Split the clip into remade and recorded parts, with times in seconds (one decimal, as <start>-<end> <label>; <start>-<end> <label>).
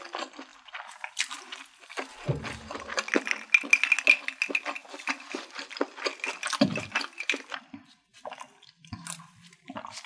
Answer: 0.0-6.7 recorded; 6.7-7.8 remade; 7.8-8.8 recorded; 8.8-9.6 remade; 9.6-10.1 recorded